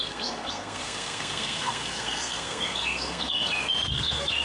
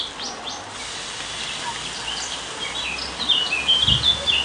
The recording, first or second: second